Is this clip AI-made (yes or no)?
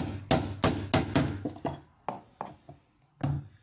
no